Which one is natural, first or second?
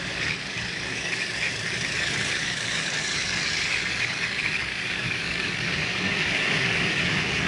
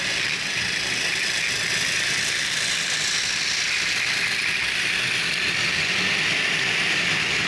second